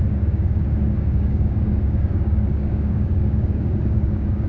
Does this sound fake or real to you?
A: fake